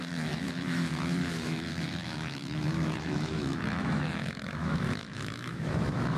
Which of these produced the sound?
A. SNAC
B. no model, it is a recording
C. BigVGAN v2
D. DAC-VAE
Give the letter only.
D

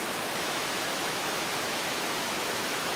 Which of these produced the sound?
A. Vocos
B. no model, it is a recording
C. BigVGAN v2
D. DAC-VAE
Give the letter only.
D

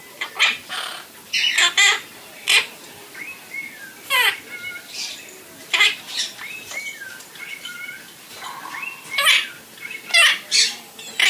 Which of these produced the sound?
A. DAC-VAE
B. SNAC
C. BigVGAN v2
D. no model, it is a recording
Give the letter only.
D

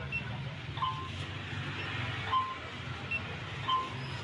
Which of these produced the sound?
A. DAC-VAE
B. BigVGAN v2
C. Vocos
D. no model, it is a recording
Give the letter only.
D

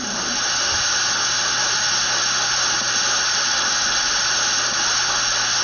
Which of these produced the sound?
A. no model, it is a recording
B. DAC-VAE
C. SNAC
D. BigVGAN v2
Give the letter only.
A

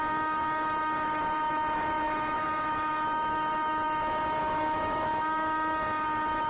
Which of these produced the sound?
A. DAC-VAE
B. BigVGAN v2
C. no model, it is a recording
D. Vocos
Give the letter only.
A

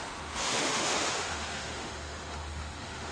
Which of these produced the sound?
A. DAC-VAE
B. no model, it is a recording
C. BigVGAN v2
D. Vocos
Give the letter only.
A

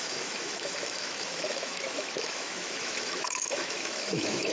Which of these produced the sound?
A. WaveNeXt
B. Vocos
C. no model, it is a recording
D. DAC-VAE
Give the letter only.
D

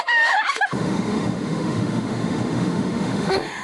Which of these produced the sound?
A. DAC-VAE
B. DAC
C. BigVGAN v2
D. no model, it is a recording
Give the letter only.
A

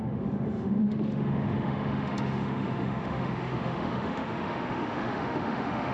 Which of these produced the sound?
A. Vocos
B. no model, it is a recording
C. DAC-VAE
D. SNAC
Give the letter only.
C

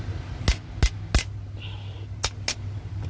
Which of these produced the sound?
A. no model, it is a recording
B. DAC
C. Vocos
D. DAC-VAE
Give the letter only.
A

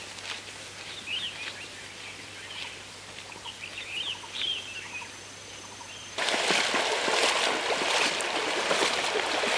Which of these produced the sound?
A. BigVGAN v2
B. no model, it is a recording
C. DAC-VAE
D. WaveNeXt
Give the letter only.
B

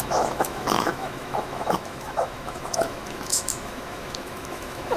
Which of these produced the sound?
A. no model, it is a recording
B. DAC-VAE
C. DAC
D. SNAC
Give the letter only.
B